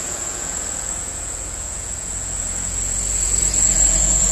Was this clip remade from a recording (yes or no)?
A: yes